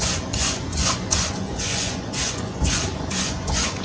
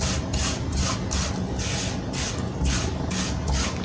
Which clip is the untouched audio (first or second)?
second